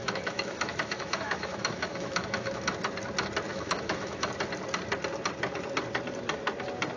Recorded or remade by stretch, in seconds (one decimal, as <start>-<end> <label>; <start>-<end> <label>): 0.0-2.7 remade; 2.7-3.5 recorded; 3.5-4.3 remade; 4.3-7.0 recorded